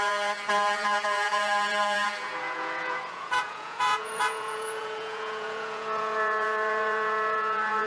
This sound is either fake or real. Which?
fake